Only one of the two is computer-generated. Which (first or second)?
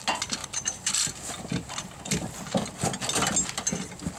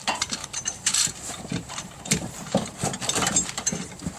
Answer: second